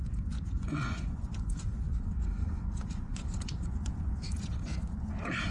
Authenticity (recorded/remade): remade